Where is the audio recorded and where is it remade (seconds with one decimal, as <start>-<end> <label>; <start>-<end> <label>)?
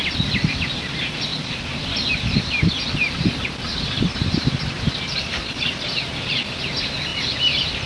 0.0-1.3 recorded; 1.3-2.1 remade; 2.1-3.7 recorded; 3.7-5.3 remade; 5.3-7.1 recorded; 7.1-7.9 remade